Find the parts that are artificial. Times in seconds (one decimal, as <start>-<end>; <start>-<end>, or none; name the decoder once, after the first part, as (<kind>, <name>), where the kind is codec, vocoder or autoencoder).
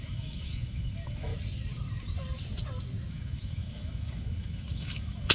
0.0-1.3 (autoencoder, DAC-VAE); 3.1-5.3